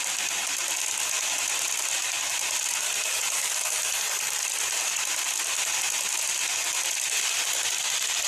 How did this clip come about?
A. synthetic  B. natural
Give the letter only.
B